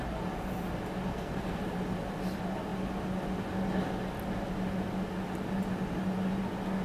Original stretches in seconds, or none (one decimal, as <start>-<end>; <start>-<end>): 0.0-1.1; 1.6-6.8